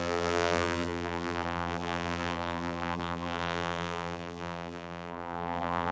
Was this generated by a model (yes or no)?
yes